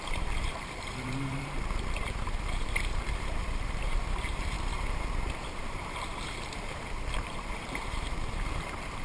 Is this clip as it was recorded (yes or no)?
no